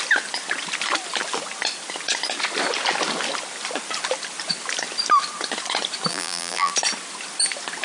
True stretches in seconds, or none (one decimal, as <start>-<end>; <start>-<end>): 0.0-6.1; 6.7-7.8